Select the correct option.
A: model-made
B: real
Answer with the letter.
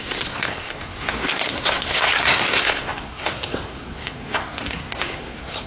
A